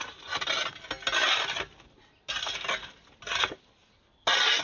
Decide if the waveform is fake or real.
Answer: real